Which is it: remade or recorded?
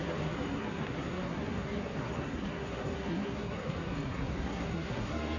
remade